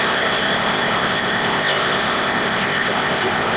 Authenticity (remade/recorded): remade